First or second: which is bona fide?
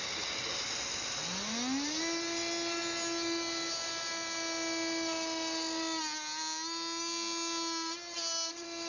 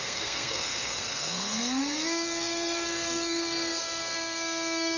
first